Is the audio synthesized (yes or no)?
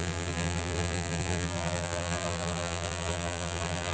yes